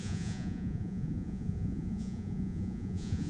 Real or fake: fake